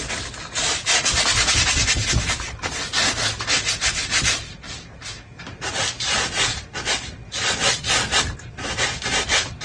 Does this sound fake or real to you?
real